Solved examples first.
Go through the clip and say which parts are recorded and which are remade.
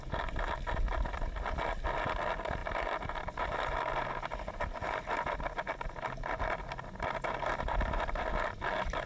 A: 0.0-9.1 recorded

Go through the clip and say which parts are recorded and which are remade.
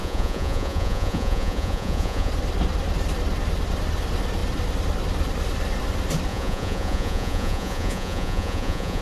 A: 0.0-2.3 remade; 2.3-6.3 recorded; 6.3-9.0 remade